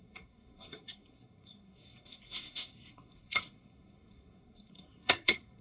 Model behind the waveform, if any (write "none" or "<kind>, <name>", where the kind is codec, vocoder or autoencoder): codec, SNAC